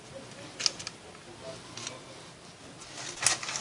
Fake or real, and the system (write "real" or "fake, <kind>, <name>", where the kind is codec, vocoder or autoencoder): real